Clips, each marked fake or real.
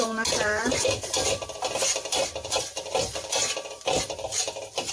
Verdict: fake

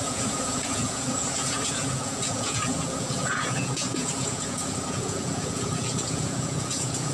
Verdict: fake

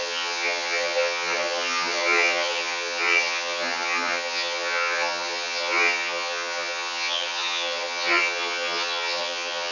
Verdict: fake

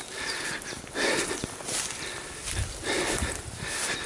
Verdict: real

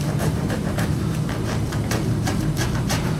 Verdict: fake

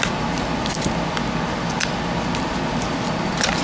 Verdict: real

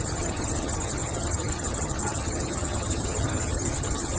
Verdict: fake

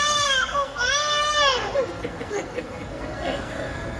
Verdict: fake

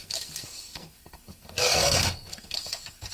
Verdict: fake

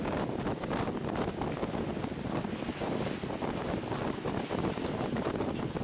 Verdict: real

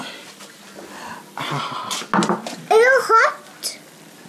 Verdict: real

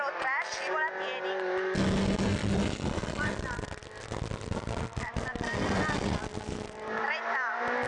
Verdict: real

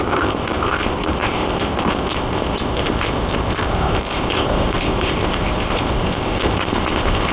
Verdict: fake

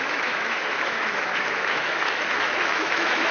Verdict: fake